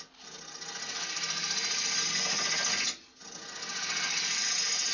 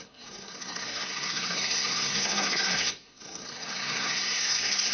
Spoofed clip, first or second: second